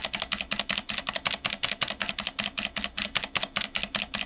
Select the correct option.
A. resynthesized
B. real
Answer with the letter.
B